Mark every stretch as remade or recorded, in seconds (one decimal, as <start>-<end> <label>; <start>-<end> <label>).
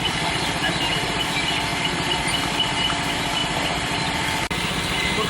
0.0-5.3 recorded